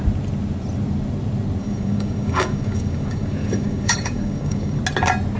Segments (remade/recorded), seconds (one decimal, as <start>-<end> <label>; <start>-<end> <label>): 0.0-1.6 recorded; 1.6-4.8 remade; 4.8-5.4 recorded